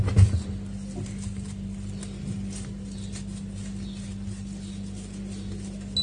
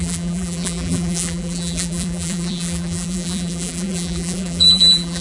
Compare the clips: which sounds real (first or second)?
first